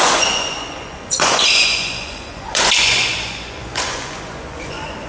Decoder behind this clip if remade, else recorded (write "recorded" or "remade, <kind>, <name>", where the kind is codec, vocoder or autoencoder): remade, vocoder, Vocos